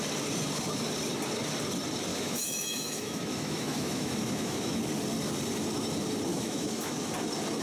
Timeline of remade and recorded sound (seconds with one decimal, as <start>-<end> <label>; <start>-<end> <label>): 0.0-2.1 recorded; 2.1-4.8 remade; 4.8-6.3 recorded; 6.3-7.0 remade; 7.0-7.6 recorded